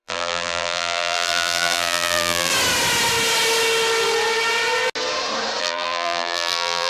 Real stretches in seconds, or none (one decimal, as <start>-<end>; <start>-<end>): 2.5-5.6